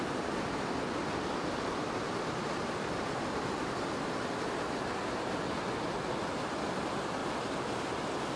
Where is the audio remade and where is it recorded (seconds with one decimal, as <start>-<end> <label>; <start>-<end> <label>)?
0.0-7.2 remade; 7.2-8.4 recorded